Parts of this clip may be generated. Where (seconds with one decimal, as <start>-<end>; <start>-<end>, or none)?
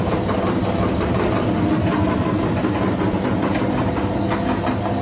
none